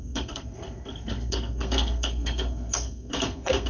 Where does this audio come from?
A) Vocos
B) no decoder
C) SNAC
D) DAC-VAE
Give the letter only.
C